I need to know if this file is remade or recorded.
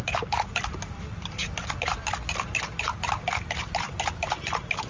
recorded